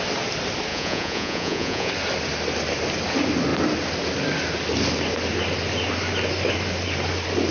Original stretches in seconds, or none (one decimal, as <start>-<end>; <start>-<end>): 0.0-0.7; 1.9-7.5